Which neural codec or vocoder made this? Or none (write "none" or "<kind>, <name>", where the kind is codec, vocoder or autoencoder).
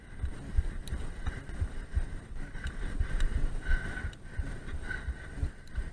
none